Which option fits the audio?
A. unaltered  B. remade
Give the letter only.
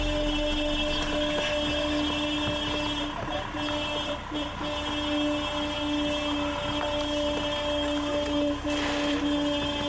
A